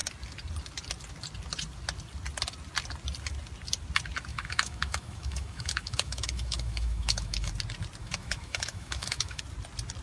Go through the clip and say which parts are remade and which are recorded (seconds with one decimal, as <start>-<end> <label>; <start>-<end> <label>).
0.0-4.3 recorded; 4.3-7.5 remade; 7.5-8.0 recorded; 8.0-9.4 remade; 9.4-10.0 recorded